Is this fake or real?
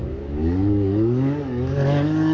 fake